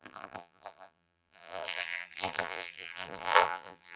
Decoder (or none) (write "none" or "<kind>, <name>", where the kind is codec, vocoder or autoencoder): vocoder, BigVGAN v2